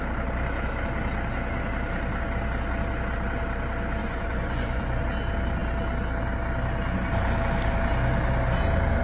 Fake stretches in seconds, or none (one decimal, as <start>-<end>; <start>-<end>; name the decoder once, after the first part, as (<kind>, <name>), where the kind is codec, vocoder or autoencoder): 4.0-5.0 (vocoder, Vocos)